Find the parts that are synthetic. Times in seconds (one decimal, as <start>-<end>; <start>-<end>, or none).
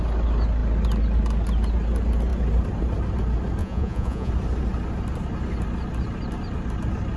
3.6-4.3